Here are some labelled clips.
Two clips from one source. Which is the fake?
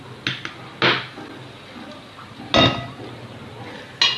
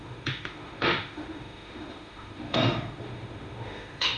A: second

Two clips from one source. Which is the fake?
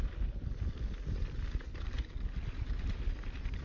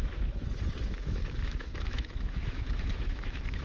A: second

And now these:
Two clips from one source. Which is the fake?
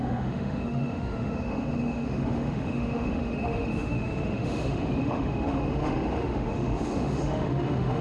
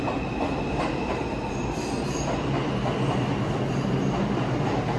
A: first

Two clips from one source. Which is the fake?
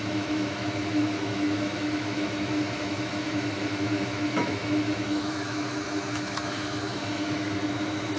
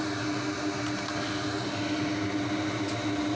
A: first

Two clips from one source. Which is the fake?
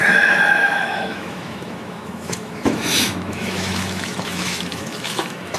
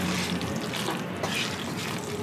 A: first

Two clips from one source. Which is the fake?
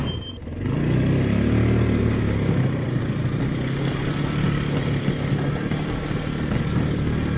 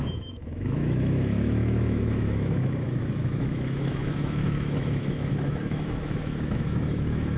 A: second